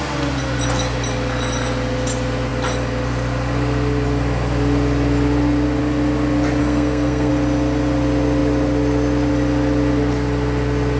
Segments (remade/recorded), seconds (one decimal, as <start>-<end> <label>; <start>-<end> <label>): 0.0-6.6 recorded; 6.6-7.3 remade; 7.3-11.0 recorded